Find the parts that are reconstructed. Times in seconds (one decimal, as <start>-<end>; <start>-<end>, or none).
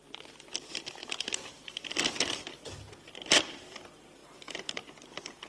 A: 0.0-5.5